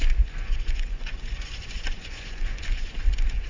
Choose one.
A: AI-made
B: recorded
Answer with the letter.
A